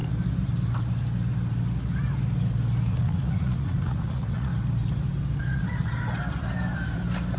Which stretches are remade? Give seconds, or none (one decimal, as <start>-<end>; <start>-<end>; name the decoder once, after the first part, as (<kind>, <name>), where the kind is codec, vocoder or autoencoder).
2.9-4.5 (vocoder, Vocos); 5.4-5.9